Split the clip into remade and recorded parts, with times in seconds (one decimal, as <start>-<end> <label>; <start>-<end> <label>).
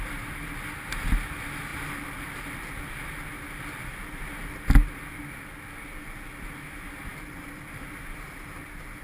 0.0-9.0 recorded